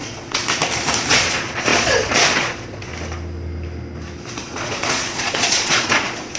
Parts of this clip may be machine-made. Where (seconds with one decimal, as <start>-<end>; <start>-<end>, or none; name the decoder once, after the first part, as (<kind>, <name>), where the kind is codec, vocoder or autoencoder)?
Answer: 0.0-0.4 (vocoder, Vocos); 1.1-2.9; 4.4-6.4